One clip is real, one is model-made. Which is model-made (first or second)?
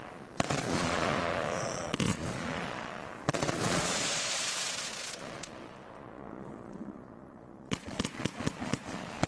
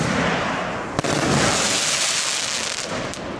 first